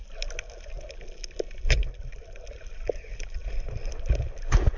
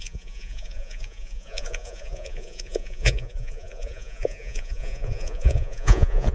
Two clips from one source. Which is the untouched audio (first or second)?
first